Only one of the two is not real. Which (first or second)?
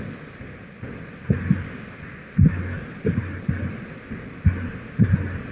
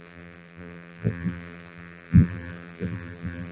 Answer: second